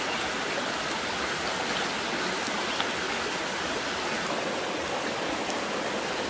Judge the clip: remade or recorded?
recorded